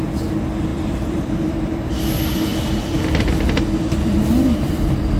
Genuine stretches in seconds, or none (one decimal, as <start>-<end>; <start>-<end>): 0.0-0.7; 1.9-5.2